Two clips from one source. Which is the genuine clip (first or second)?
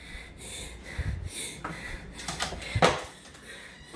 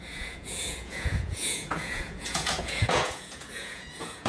first